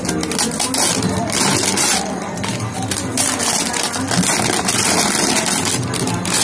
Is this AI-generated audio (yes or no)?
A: no